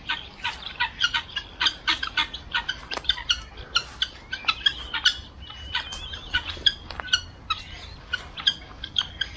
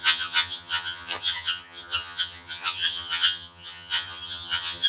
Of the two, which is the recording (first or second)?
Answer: first